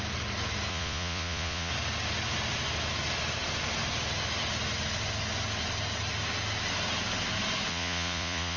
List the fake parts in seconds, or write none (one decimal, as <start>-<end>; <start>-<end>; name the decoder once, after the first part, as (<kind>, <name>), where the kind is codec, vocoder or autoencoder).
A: 0.7-1.7 (vocoder, Vocos); 7.7-8.6